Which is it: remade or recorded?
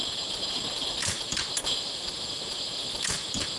recorded